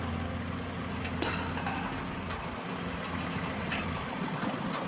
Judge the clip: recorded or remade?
recorded